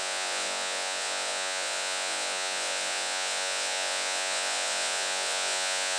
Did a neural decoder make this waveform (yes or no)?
yes